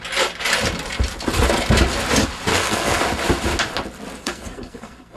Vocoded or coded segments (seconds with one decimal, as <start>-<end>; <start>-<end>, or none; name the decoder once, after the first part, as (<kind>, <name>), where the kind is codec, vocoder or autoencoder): 2.5-3.0 (codec, SNAC); 4.2-5.2